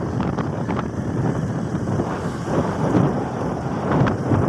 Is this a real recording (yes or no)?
no